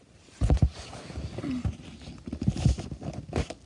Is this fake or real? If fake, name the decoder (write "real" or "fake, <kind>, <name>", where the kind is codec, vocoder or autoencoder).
real